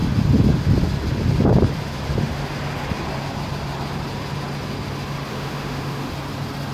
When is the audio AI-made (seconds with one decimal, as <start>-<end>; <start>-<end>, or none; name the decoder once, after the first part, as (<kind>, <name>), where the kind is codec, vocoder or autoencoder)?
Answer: 5.3-6.1 (autoencoder, DAC-VAE)

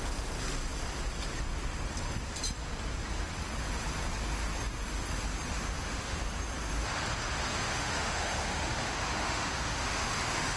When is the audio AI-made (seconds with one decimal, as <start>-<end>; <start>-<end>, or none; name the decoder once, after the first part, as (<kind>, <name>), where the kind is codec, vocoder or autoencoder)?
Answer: 5.6-6.2 (autoencoder, DAC-VAE); 7.5-10.6